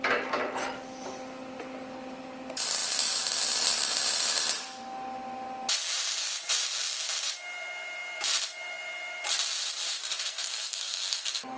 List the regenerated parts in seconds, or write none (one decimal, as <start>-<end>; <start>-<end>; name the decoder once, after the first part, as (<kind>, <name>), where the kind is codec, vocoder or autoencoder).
10.0-11.6 (codec, SNAC)